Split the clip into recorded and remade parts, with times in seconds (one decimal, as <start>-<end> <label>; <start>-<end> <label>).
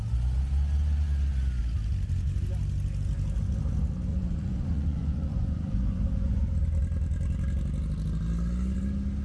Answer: 0.0-4.1 recorded; 4.1-6.4 remade; 6.4-9.2 recorded